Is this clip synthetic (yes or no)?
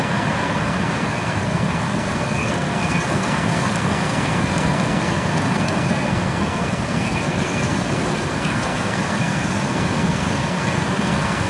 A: yes